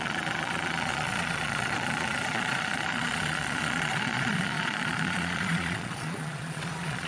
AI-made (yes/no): yes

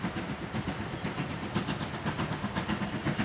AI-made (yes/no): no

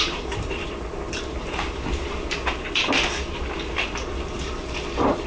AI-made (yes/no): yes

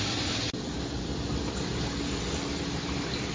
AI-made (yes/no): no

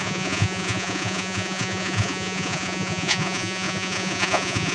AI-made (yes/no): yes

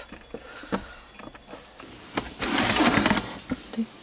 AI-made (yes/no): no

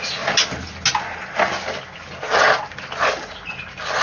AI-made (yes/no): no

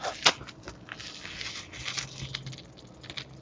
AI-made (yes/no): no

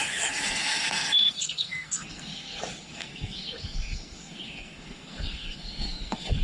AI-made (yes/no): yes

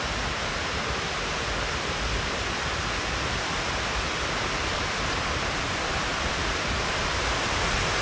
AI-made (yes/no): no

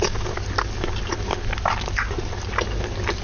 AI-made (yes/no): no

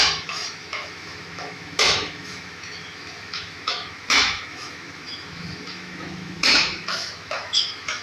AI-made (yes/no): yes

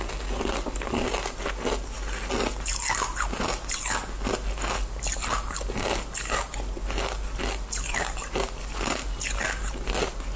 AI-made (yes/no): no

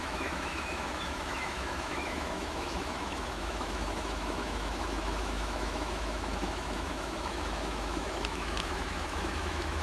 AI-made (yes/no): yes